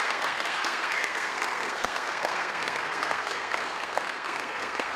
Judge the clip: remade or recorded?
remade